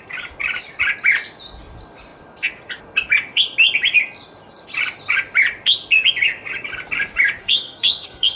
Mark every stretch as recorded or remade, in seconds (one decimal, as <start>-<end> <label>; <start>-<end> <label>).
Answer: 0.0-7.4 recorded; 7.4-8.4 remade

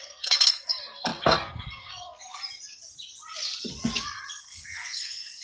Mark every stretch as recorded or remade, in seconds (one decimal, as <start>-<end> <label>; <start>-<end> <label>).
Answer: 0.0-2.4 remade; 2.4-4.3 recorded; 4.3-5.4 remade

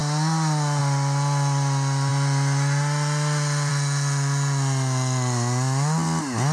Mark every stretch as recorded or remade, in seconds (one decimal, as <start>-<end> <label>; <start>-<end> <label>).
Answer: 0.0-6.5 recorded

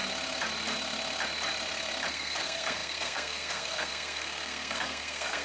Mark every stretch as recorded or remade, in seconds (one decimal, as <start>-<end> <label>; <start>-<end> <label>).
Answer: 0.0-2.1 recorded; 2.1-5.4 remade

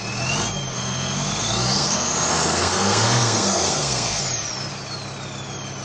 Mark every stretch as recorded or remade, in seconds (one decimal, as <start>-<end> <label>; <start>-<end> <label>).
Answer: 0.0-0.7 recorded; 0.7-4.2 remade; 4.2-5.8 recorded

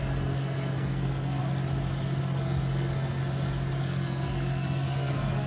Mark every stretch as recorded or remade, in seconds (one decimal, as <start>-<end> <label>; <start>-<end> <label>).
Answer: 0.0-1.4 remade; 1.4-2.2 recorded; 2.2-3.2 remade; 3.2-3.8 recorded; 3.8-5.5 remade

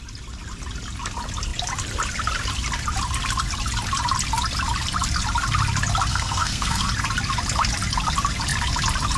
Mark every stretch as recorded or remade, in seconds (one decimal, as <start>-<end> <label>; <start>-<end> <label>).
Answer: 0.0-6.1 recorded; 6.1-6.9 remade; 6.9-9.2 recorded

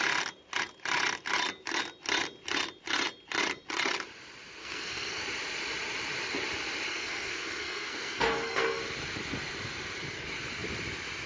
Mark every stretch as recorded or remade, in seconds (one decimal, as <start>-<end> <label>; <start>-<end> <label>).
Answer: 0.0-4.6 recorded; 4.6-5.2 remade; 5.2-6.9 recorded; 6.9-8.8 remade; 8.8-11.3 recorded